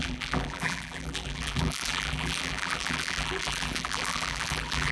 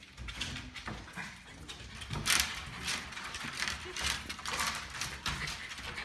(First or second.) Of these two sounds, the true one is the second